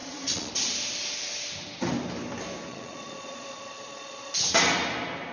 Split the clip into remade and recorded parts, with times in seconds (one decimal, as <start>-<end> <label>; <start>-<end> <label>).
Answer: 0.0-0.5 remade; 0.5-2.7 recorded; 2.7-4.3 remade; 4.3-5.3 recorded